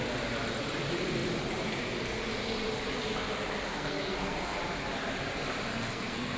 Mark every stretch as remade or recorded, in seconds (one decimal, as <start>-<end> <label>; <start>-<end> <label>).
0.0-3.7 recorded; 3.7-4.6 remade; 4.6-5.7 recorded; 5.7-6.4 remade